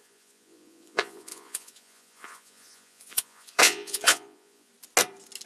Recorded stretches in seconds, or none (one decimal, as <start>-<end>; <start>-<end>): 4.7-5.5